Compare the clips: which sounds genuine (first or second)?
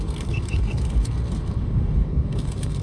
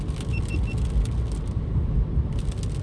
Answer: second